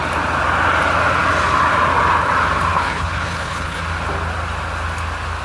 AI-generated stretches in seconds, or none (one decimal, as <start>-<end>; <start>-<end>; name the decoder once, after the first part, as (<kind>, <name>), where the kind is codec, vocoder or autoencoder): 2.7-3.8 (codec, HILCodec)